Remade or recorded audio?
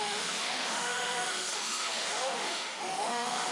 remade